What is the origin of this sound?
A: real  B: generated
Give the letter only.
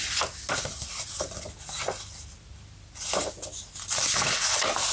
A